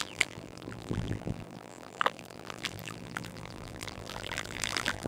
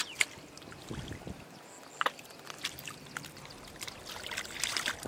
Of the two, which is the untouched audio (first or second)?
second